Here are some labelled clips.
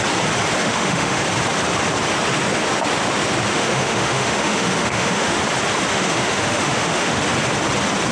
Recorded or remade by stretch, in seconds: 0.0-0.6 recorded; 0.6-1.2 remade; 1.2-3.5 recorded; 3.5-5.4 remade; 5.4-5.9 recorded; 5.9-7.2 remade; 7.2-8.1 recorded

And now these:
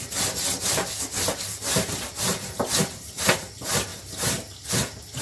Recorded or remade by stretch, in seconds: 0.0-5.2 recorded

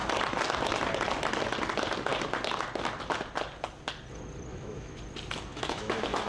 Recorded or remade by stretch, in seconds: 0.0-4.5 recorded; 4.5-5.0 remade; 5.0-5.5 recorded; 5.5-6.3 remade

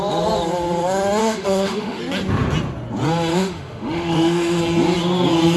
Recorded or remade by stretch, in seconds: 0.0-1.2 recorded; 1.2-2.0 remade; 2.0-3.3 recorded; 3.3-4.6 remade; 4.6-5.6 recorded